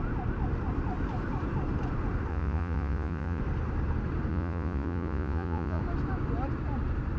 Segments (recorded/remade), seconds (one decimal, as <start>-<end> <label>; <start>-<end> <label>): 0.0-2.3 recorded; 2.3-3.4 remade; 3.4-4.3 recorded; 4.3-5.8 remade; 5.8-7.2 recorded